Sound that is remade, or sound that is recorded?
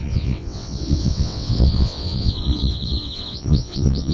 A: remade